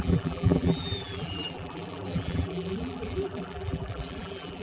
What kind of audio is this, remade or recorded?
remade